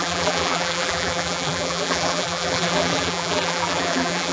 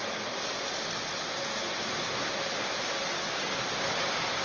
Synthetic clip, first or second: first